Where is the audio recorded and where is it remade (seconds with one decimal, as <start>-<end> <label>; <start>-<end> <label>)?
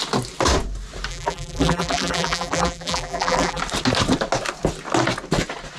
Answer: 0.0-1.1 recorded; 1.1-3.6 remade; 3.6-5.8 recorded